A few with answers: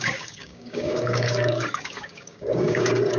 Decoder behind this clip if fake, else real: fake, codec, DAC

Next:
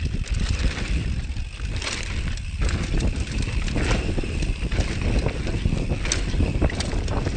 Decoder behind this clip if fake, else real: fake, vocoder, BigVGAN v2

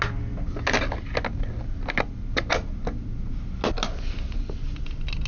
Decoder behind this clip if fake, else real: real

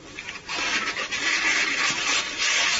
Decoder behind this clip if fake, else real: real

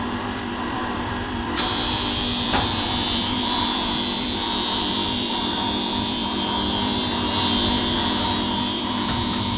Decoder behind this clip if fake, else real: fake, vocoder, BigVGAN v2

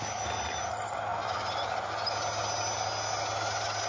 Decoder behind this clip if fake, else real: real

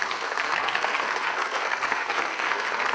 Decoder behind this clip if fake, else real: fake, codec, SNAC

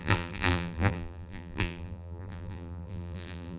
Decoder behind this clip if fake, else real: fake, vocoder, BigVGAN v2